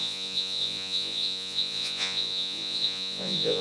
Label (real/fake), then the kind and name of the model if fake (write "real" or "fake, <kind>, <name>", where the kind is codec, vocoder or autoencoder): fake, vocoder, Vocos